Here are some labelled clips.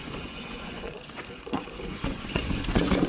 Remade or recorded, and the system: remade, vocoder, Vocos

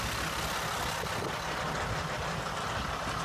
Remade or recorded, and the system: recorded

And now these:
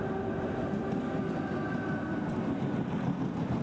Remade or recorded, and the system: recorded